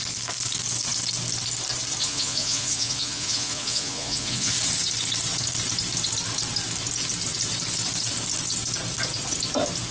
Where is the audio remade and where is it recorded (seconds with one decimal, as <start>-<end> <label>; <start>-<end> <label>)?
0.0-2.0 recorded; 2.0-4.5 remade; 4.5-9.9 recorded